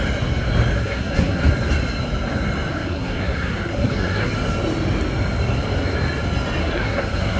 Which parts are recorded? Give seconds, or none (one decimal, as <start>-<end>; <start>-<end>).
0.0-0.8; 1.4-2.7; 4.3-6.6